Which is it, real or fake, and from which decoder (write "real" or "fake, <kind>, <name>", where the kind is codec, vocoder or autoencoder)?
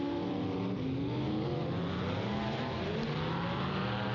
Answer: real